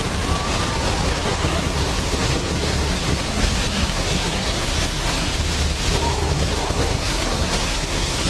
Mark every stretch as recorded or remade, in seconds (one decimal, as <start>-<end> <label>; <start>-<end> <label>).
0.0-1.1 recorded; 1.1-5.3 remade; 5.3-6.1 recorded; 6.1-8.3 remade